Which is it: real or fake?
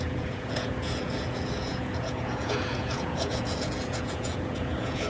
fake